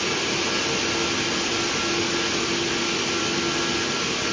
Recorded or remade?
recorded